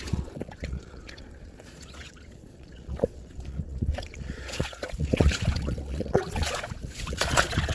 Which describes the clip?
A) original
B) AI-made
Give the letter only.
B